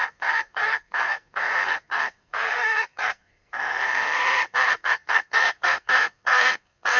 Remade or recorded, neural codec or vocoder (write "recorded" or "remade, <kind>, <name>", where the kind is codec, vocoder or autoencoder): remade, codec, SNAC